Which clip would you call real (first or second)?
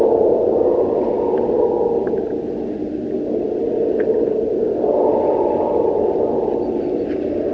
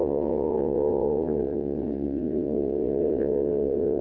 first